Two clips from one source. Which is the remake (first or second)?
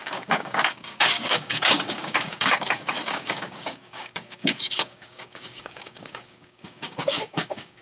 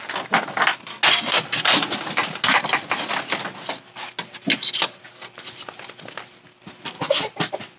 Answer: first